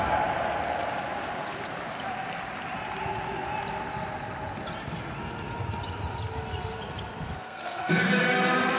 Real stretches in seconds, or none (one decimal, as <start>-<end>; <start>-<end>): 0.0-7.4; 8.0-8.8